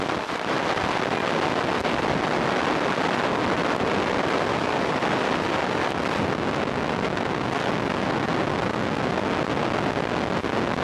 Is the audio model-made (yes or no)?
no